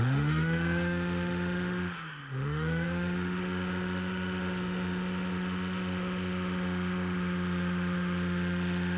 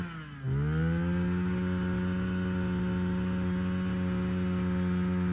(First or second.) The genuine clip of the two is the second